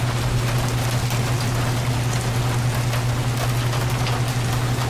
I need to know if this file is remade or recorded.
recorded